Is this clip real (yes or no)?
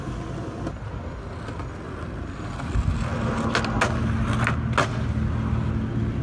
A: yes